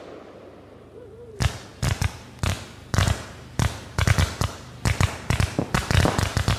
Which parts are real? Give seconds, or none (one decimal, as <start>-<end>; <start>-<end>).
0.0-6.6